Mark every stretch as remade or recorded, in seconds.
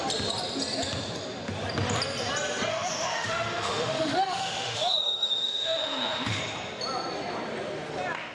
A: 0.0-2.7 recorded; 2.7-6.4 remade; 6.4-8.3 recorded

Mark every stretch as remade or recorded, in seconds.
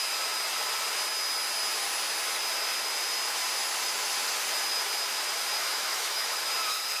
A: 0.0-5.7 recorded; 5.7-6.4 remade; 6.4-7.0 recorded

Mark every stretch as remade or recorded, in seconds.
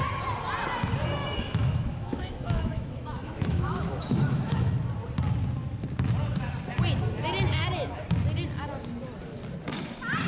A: 0.0-1.2 recorded; 1.2-4.7 remade; 4.7-10.3 recorded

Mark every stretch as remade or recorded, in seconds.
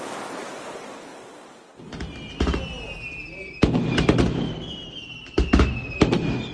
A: 0.0-6.5 recorded